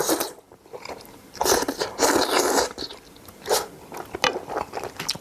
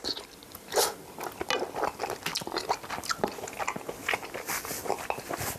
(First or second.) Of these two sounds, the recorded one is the second